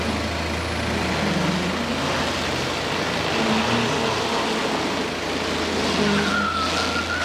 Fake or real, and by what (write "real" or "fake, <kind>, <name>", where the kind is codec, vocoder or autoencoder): real